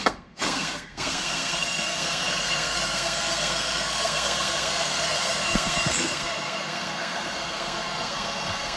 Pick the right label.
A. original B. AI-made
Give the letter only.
B